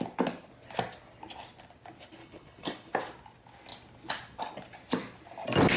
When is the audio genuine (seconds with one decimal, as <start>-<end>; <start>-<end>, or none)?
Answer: 0.0-2.2; 2.9-5.8

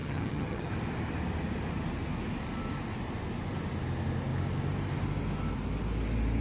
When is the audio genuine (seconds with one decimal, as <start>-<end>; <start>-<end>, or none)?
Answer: 0.7-6.4

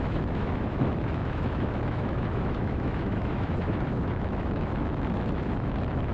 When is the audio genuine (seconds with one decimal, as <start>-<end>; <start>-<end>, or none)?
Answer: none

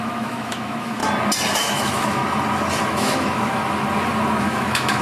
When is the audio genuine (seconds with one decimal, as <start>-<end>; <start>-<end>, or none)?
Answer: 1.0-1.6; 2.2-2.8; 3.6-4.4

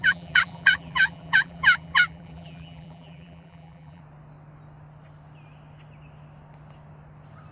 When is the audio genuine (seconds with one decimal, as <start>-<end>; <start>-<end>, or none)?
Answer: 4.0-7.5

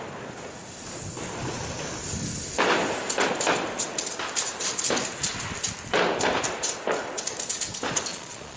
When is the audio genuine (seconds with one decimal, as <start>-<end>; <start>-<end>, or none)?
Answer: 0.0-8.1

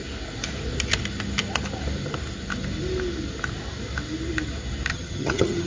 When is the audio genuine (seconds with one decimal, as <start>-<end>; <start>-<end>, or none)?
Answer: 0.0-4.9